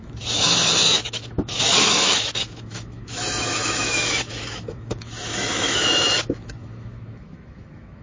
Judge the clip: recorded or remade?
remade